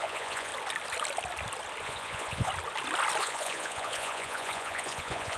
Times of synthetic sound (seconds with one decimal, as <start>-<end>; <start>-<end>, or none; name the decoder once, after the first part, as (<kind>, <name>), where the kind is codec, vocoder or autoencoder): 0.0-0.5 (vocoder, Vocos); 1.8-2.5; 3.2-5.4

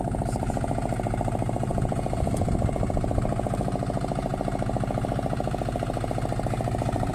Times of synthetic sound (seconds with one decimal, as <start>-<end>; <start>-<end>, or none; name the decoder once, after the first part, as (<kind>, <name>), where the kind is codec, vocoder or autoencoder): 1.7-2.5 (vocoder, Vocos)

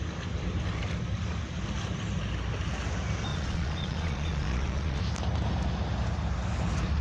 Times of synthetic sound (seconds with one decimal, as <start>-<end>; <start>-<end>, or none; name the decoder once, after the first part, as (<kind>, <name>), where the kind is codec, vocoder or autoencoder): 3.3-5.0 (vocoder, Vocos)

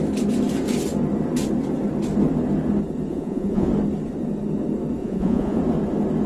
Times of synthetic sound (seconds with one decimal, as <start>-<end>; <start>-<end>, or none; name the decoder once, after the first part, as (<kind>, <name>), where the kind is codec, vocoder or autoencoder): 3.1-3.7 (vocoder, Vocos); 5.0-5.6